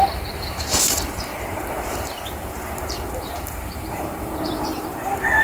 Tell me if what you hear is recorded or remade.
remade